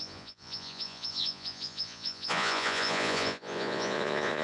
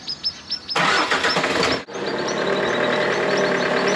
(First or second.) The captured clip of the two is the second